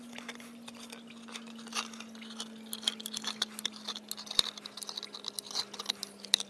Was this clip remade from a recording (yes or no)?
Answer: no